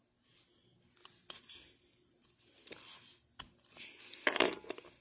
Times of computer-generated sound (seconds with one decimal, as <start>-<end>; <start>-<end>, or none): none